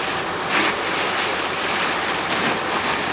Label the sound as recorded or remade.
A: recorded